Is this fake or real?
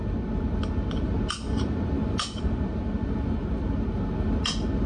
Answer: real